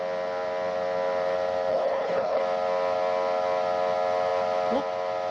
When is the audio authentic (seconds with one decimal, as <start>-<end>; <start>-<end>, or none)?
0.0-1.7; 2.4-5.3